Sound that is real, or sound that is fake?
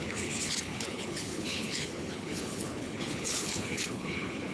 fake